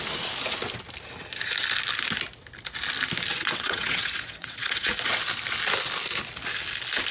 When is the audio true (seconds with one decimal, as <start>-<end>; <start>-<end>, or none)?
0.0-3.3; 4.9-7.1